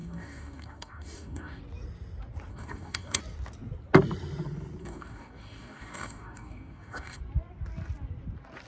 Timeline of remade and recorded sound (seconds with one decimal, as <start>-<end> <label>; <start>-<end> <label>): 0.0-1.6 remade; 1.6-2.5 recorded; 2.5-3.2 remade; 3.2-4.8 recorded; 4.8-7.2 remade; 7.2-8.7 recorded

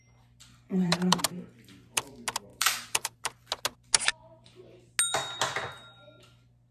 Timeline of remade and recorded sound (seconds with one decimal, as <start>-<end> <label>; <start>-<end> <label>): 0.0-0.7 recorded; 0.7-1.2 remade; 1.2-2.5 recorded; 2.5-3.2 remade; 3.2-6.7 recorded

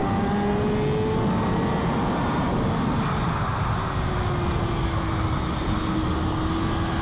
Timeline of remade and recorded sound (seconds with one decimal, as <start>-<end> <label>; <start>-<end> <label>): 0.0-7.0 recorded

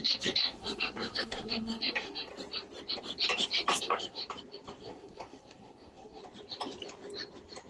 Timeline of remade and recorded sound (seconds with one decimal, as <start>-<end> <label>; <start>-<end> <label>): 0.0-2.3 remade; 2.3-3.8 recorded; 3.8-4.2 remade; 4.2-4.8 recorded; 4.8-6.2 remade; 6.2-7.7 recorded